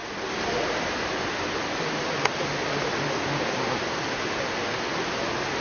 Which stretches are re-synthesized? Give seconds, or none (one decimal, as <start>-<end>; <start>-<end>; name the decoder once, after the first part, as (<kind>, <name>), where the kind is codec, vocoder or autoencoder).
none